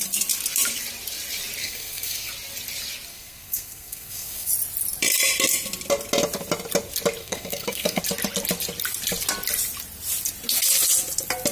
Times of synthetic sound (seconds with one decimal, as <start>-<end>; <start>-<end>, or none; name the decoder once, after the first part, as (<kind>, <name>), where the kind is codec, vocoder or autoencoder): 1.6-2.3 (codec, SNAC); 3.1-4.5; 7.2-8.0